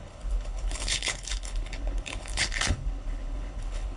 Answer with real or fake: fake